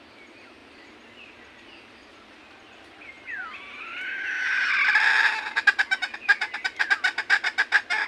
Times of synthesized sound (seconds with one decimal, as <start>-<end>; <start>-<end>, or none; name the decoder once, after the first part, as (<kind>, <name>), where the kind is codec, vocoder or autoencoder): none